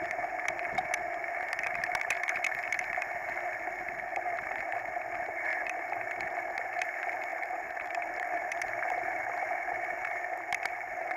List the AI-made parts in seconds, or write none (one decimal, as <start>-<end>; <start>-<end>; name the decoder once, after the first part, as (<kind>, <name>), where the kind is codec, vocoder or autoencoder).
4.1-4.6 (vocoder, BigVGAN v2); 5.5-6.1; 7.3-9.5